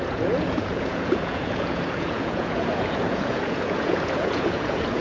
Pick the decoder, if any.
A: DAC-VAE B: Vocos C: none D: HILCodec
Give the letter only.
B